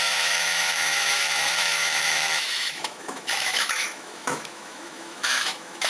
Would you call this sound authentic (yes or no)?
no